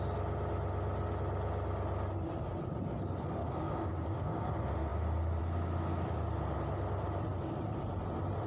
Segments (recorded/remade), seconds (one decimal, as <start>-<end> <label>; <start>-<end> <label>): 0.0-3.4 recorded; 3.4-4.5 remade; 4.5-8.5 recorded